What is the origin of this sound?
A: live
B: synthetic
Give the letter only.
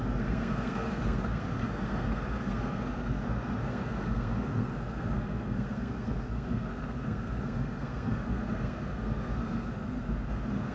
B